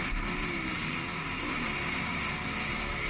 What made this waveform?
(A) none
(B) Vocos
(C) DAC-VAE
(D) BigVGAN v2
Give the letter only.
A